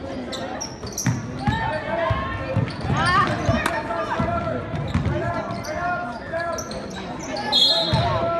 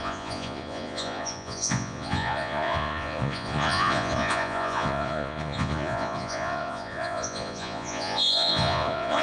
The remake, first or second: second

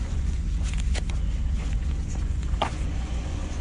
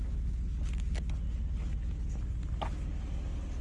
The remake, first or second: first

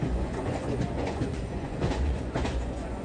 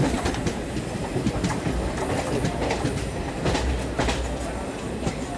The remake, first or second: first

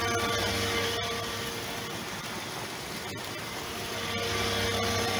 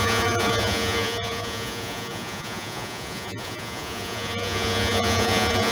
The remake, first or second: second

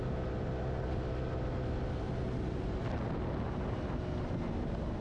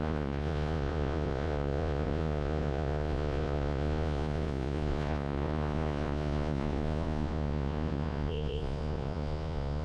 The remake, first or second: second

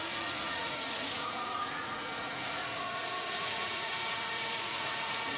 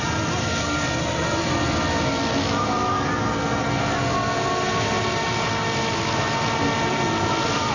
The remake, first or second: first